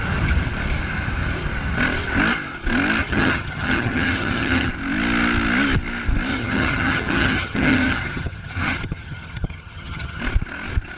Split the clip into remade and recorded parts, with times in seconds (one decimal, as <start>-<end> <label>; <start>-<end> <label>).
0.0-3.0 recorded; 3.0-4.7 remade; 4.7-6.3 recorded; 6.3-10.2 remade; 10.2-11.0 recorded